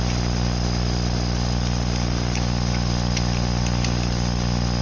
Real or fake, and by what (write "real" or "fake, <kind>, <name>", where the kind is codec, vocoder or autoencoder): real